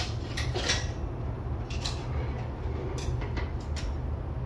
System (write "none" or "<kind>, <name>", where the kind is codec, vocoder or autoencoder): none